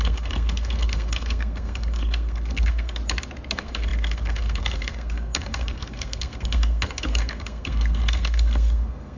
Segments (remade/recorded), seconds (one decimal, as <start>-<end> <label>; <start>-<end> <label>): 0.0-3.0 remade; 3.0-3.5 recorded; 3.5-9.2 remade